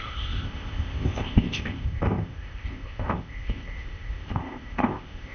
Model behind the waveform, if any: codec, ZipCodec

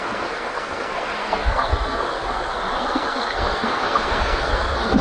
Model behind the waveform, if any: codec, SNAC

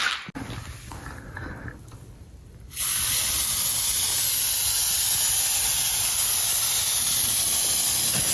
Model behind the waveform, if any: none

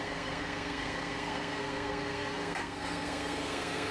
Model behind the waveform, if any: codec, SNAC